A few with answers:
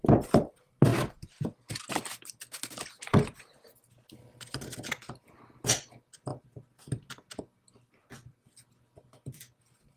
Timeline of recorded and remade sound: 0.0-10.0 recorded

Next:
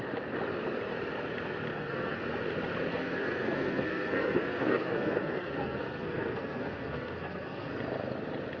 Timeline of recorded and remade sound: 0.0-1.7 recorded; 1.7-2.2 remade; 2.2-2.9 recorded; 2.9-7.7 remade; 7.7-8.6 recorded

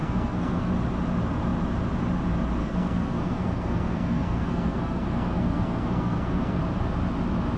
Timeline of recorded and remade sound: 0.0-0.7 remade; 0.7-2.6 recorded; 2.6-6.6 remade; 6.6-7.6 recorded

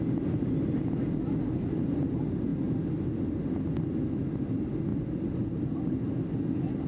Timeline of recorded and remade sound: 0.0-6.9 recorded

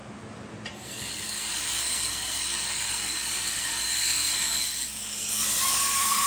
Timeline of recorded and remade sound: 0.0-0.7 recorded; 0.7-6.3 remade

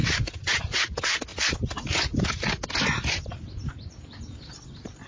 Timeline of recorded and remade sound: 0.0-5.1 recorded